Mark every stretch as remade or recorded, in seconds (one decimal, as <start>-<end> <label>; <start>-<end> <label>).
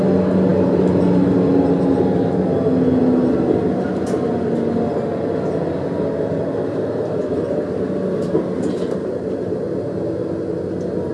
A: 0.0-11.1 recorded